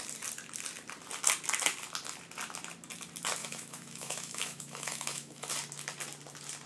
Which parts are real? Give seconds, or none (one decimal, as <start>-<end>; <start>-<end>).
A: 0.0-3.4; 5.5-6.7